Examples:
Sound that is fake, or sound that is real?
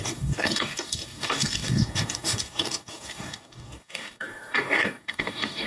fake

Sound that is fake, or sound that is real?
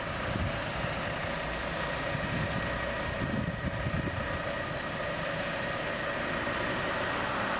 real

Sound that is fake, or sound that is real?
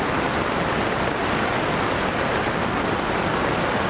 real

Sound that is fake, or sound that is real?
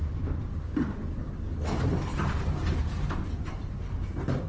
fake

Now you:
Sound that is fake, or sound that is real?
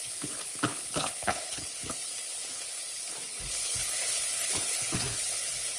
fake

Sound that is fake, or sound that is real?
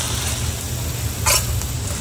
real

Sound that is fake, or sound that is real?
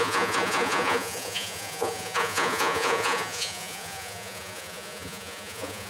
fake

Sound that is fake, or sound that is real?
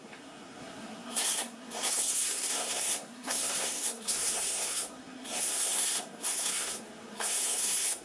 fake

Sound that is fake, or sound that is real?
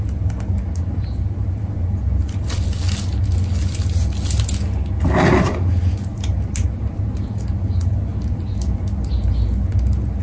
real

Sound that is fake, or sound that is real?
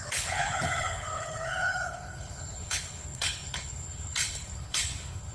fake